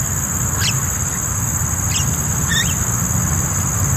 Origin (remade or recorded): recorded